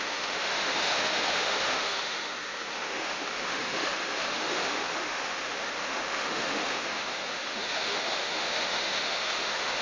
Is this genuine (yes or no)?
no